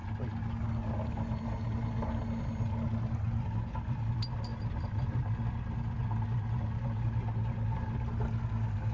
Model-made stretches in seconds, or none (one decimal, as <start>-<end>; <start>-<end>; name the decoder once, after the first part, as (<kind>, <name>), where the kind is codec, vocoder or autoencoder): none